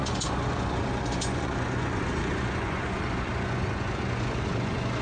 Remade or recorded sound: remade